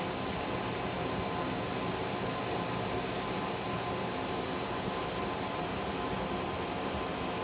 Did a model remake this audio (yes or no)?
no